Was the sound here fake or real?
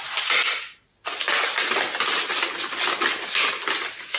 real